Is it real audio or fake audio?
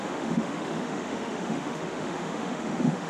fake